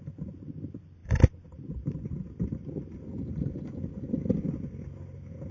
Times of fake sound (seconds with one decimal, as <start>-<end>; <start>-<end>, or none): none

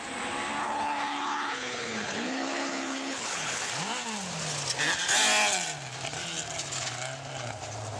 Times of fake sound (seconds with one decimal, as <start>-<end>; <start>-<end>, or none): 0.6-3.7

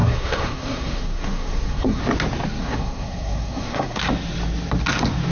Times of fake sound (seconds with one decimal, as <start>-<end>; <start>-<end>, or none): 0.0-2.0; 2.6-4.0

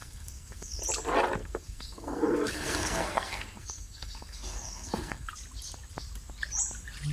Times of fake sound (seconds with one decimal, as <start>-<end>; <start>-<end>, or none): 0.0-0.8; 1.4-5.3

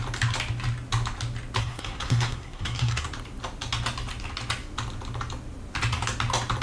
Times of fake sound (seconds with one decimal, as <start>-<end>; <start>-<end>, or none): 1.6-3.1